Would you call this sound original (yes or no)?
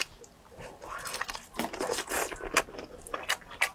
yes